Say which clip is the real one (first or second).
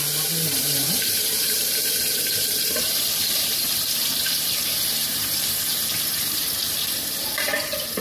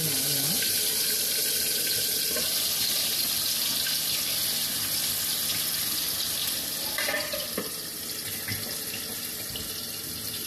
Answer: second